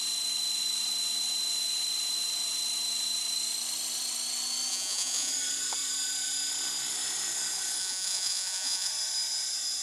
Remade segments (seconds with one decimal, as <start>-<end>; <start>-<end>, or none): 4.7-5.3; 7.8-8.9